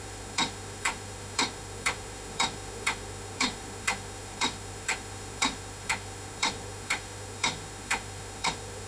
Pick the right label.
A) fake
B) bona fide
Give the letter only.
A